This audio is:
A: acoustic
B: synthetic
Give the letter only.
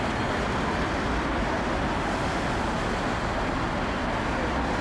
A